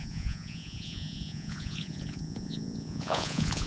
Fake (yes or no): yes